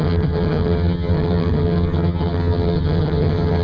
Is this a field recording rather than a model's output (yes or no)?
no